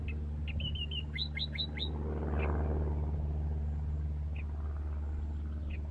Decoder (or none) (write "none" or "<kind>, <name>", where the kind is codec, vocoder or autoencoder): none